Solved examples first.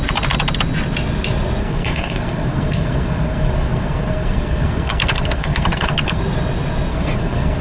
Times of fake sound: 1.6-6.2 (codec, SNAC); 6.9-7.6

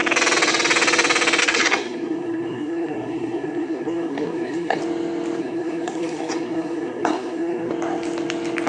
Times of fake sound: 1.4-4.8 (codec, SNAC); 5.4-7.7

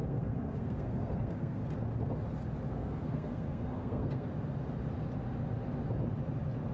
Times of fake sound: 0.0-1.6 (codec, SNAC); 2.7-4.3

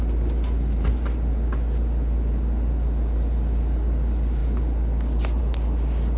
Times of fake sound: none

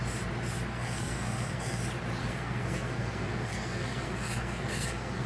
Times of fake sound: 0.7-1.8 (codec, SNAC); 2.2-5.3